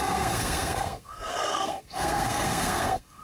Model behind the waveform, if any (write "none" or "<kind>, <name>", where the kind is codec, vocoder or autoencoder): codec, SNAC